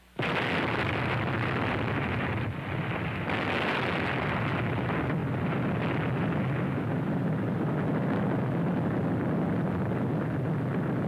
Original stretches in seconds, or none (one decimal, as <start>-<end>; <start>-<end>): 0.0-11.1